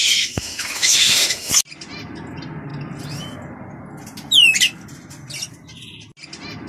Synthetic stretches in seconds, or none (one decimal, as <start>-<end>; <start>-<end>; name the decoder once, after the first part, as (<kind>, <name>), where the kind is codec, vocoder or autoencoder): 0.0-1.5 (autoencoder, DAC-VAE)

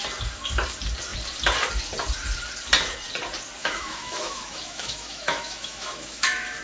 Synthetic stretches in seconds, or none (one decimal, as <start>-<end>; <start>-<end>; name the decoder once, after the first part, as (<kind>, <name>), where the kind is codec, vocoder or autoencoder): 3.6-6.6 (autoencoder, DAC-VAE)

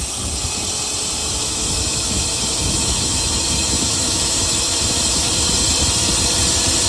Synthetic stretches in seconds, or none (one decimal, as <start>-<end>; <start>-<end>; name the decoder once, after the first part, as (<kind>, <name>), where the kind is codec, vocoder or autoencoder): 1.2-5.3 (autoencoder, DAC-VAE)

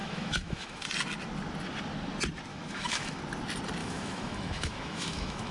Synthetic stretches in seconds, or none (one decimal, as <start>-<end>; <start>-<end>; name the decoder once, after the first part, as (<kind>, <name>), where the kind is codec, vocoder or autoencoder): 0.0-0.8 (autoencoder, DAC-VAE); 2.5-3.2; 3.8-5.5

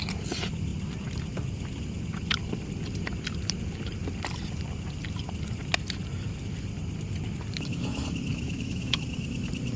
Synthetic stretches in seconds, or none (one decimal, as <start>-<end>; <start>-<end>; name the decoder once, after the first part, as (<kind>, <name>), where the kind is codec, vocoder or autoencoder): 8.3-9.0 (autoencoder, DAC-VAE)